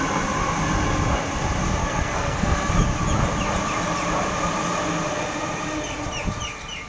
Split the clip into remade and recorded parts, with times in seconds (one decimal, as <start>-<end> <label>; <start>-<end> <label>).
0.0-1.8 recorded; 1.8-2.7 remade; 2.7-6.9 recorded

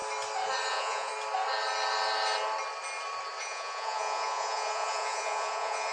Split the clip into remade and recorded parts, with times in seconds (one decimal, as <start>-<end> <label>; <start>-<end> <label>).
0.0-0.7 recorded; 0.7-1.1 remade; 1.1-3.4 recorded; 3.4-5.9 remade